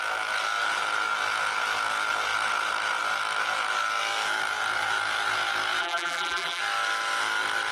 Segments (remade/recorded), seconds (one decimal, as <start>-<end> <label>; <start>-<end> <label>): 0.0-5.8 recorded; 5.8-6.6 remade; 6.6-7.7 recorded